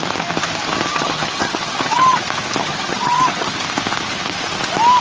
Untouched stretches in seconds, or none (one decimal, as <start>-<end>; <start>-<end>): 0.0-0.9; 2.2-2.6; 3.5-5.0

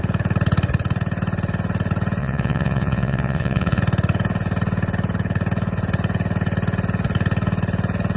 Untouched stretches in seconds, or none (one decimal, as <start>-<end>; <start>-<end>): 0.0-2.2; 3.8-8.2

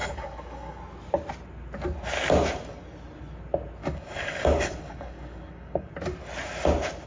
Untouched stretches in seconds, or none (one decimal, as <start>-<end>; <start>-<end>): 0.8-3.8; 5.9-7.1